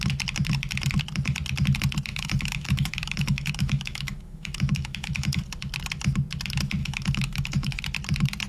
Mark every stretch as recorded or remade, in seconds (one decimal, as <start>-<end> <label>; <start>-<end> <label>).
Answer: 0.0-2.1 recorded; 2.1-5.4 remade; 5.4-6.8 recorded; 6.8-7.8 remade; 7.8-8.5 recorded

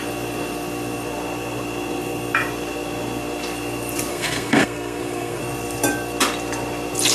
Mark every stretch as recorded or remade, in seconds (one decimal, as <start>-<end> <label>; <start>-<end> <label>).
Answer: 0.0-4.1 recorded; 4.1-5.4 remade; 5.4-7.1 recorded

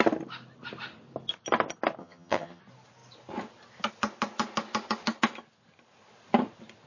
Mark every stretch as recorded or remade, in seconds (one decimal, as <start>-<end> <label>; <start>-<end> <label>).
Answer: 0.0-2.0 recorded; 2.0-2.6 remade; 2.6-6.9 recorded

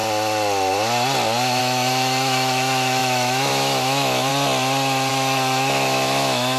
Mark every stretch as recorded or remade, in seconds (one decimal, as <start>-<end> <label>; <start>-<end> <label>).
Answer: 0.0-1.6 recorded; 1.6-4.3 remade; 4.3-5.1 recorded; 5.1-6.6 remade

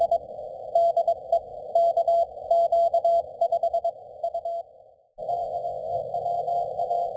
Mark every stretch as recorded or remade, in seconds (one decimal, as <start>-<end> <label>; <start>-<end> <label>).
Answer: 0.0-5.4 recorded; 5.4-6.0 remade; 6.0-7.2 recorded